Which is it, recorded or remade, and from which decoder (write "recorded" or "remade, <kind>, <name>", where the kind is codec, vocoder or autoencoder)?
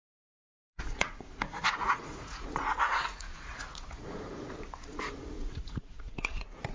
remade, vocoder, Vocos